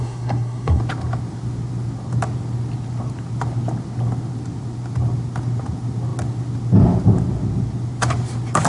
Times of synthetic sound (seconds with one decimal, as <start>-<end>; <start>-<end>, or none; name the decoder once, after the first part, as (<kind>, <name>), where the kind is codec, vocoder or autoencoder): 0.0-0.8 (codec, SNAC)

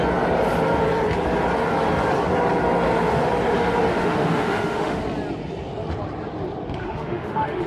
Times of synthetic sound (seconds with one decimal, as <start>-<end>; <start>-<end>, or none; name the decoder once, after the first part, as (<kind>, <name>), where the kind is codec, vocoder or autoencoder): 3.9-5.0 (autoencoder, DAC-VAE); 6.8-7.7

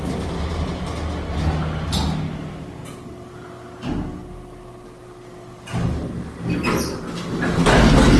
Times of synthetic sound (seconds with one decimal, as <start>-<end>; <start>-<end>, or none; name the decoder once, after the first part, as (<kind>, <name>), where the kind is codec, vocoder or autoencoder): none

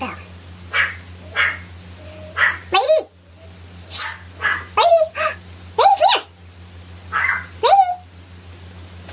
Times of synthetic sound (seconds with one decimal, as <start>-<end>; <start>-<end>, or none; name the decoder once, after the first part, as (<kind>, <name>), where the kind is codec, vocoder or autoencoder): 4.5-5.1 (vocoder, BigVGAN v2)

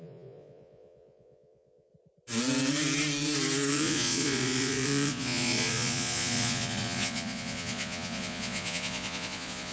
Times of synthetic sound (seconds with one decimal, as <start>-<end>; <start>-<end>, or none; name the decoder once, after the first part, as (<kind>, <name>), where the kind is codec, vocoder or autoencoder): 0.0-1.9 (vocoder, Vocos); 3.7-9.7

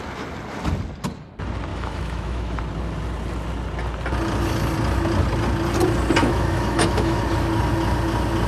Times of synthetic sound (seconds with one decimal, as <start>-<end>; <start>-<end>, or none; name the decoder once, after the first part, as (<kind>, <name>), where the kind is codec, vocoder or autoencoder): 1.7-2.6 (autoencoder, DAC-VAE); 6.2-7.2

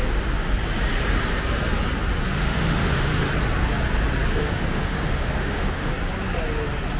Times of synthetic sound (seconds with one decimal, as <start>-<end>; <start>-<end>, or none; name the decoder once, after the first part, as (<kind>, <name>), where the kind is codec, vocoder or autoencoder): 2.3-3.1 (autoencoder, DAC-VAE); 4.3-5.9

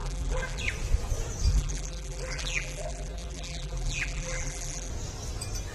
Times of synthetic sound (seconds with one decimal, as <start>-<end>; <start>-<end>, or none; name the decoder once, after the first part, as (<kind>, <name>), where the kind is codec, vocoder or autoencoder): 0.0-0.6 (vocoder, BigVGAN v2); 1.5-4.9